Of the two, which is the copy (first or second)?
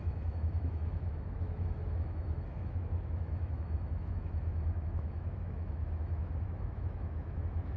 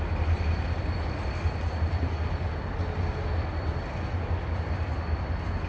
first